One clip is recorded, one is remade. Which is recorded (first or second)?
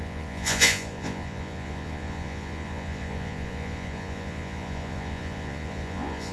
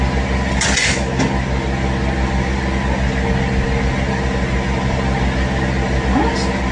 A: second